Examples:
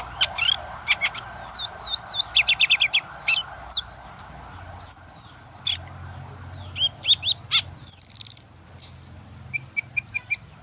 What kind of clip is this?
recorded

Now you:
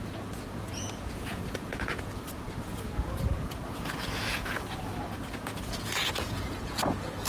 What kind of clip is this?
remade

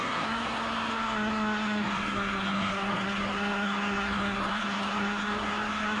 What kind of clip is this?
remade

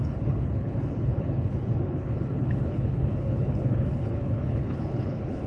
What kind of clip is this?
remade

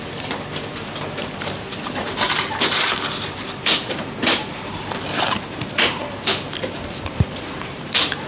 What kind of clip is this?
remade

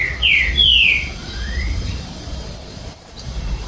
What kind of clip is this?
remade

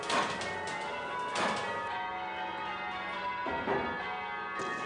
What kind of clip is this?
recorded